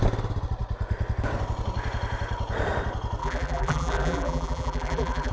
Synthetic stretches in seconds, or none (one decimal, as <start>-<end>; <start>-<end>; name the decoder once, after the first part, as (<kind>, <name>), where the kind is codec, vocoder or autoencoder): 3.2-5.3 (vocoder, BigVGAN v2)